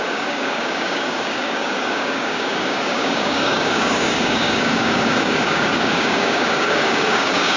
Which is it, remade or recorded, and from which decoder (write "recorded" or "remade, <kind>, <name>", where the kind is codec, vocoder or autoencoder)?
remade, codec, DAC